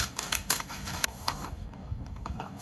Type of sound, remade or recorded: remade